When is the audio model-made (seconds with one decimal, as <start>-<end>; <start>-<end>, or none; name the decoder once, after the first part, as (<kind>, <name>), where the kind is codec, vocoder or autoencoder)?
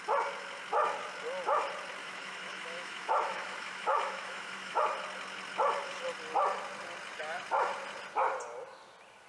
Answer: 2.0-4.8 (autoencoder, DAC-VAE)